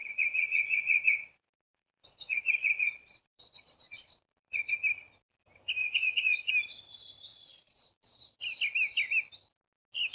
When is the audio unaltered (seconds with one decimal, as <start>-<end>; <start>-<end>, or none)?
4.7-5.8; 6.5-7.3; 8.4-10.1